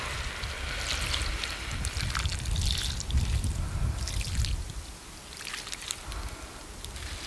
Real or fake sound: real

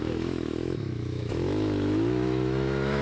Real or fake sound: fake